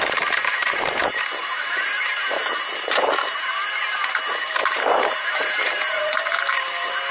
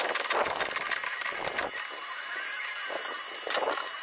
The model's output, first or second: first